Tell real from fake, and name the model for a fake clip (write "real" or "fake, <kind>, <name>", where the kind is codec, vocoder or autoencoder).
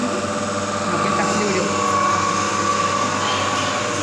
real